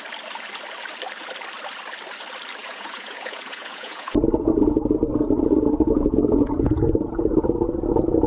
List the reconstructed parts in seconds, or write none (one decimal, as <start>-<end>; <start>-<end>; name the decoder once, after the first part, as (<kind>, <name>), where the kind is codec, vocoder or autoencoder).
2.6-7.6 (vocoder, Vocos)